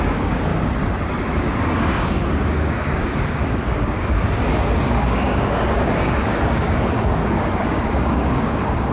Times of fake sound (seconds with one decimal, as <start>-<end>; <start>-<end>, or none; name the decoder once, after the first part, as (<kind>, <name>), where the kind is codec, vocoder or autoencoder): 0.0-8.9 (codec, DAC)

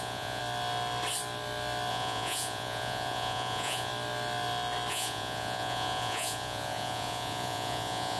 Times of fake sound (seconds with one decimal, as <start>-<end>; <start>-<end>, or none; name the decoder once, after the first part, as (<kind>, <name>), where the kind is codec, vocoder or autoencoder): 0.0-0.4 (vocoder, Vocos); 1.9-3.9; 4.9-8.2

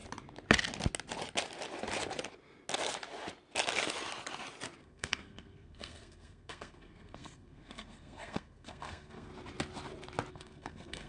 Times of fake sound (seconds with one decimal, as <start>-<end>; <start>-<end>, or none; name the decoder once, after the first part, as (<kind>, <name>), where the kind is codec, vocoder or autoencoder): 4.8-9.3 (codec, SNAC); 10.3-11.1

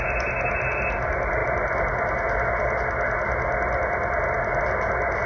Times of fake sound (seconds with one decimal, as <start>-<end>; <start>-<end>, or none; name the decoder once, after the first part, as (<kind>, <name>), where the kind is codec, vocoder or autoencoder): none

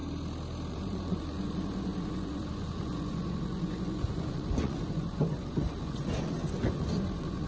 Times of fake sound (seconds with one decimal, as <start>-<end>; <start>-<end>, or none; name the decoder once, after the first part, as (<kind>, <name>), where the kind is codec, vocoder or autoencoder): 0.7-7.5 (vocoder, Vocos)